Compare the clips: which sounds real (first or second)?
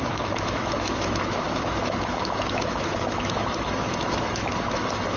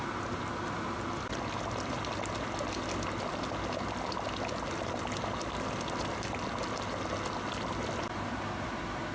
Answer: second